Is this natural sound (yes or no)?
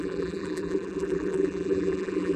no